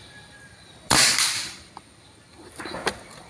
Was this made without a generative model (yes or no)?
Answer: no